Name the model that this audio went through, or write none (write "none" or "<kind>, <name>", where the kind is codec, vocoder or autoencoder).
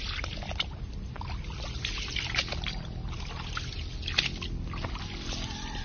none